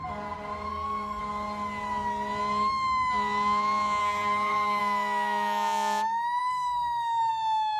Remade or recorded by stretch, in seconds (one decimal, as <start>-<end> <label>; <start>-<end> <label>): 0.0-0.7 recorded; 0.7-1.2 remade; 1.2-4.0 recorded; 4.0-4.8 remade; 4.8-6.4 recorded; 6.4-7.3 remade; 7.3-7.8 recorded